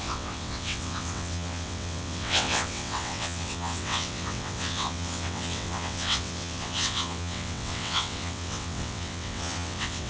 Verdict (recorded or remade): remade